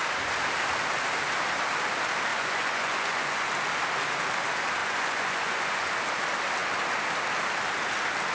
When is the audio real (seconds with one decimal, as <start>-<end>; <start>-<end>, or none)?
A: 0.0-2.3; 3.5-4.8; 5.9-8.3

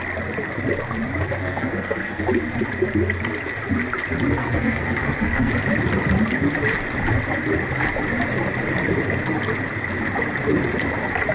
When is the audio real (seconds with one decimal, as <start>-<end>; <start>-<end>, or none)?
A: 0.0-1.4; 2.2-4.4; 5.5-11.3

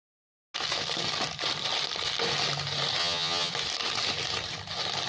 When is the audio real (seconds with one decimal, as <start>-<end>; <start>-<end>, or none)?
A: 0.0-3.0; 3.5-5.1

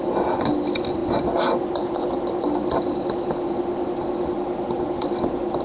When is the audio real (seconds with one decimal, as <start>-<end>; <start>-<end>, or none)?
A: 0.0-5.6